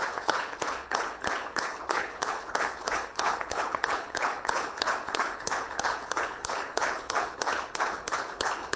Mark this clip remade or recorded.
remade